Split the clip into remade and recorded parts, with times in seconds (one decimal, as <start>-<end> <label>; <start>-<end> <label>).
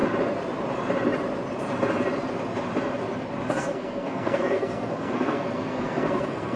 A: 0.0-3.5 recorded; 3.5-6.6 remade